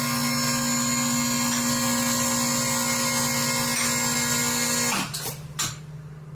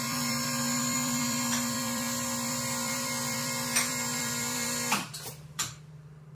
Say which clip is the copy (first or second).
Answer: second